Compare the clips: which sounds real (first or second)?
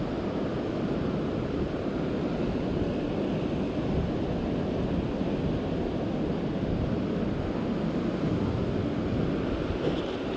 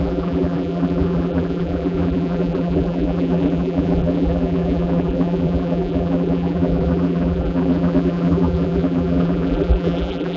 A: first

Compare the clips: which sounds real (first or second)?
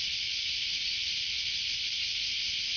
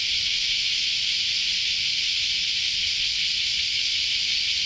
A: second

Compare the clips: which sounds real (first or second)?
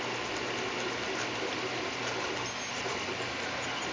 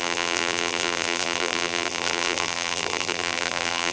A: first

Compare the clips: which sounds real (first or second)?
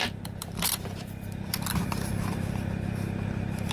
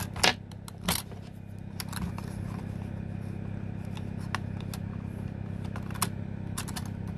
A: second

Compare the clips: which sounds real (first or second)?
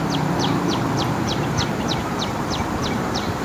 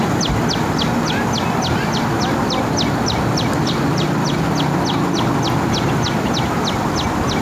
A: second